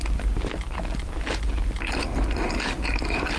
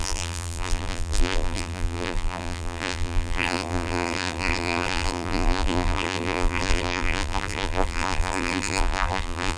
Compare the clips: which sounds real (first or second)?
first